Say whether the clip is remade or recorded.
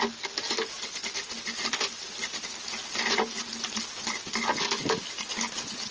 recorded